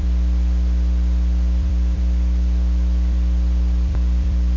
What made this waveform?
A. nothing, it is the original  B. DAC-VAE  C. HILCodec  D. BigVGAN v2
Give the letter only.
D